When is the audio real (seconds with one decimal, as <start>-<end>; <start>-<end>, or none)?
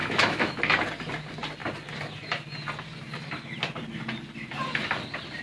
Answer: 0.6-5.4